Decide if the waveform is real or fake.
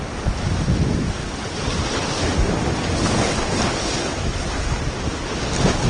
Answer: real